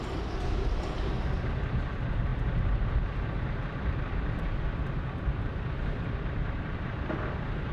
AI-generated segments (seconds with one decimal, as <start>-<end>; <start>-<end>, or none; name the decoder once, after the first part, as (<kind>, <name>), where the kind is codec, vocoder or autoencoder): none